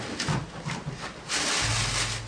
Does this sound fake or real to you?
real